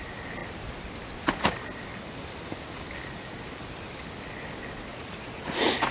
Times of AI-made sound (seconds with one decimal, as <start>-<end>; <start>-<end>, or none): 4.9-5.9